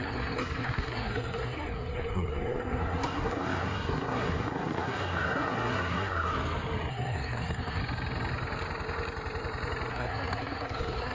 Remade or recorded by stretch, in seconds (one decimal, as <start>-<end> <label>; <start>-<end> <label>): 0.0-6.3 remade; 6.3-6.9 recorded; 6.9-7.8 remade; 7.8-9.9 recorded; 9.9-11.1 remade